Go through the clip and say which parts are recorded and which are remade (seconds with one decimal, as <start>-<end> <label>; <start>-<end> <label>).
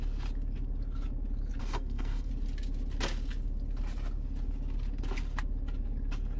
0.0-1.6 recorded; 1.6-2.3 remade; 2.3-6.4 recorded